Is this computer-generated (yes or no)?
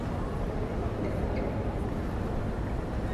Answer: no